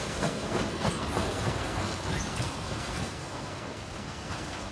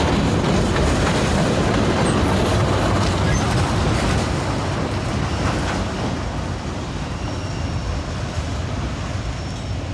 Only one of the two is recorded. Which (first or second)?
second